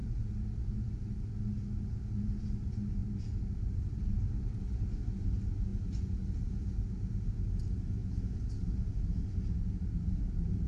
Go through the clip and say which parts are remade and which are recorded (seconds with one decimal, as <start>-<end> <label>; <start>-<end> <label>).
0.0-10.7 recorded